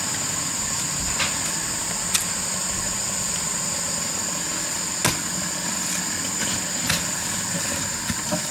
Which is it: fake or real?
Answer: real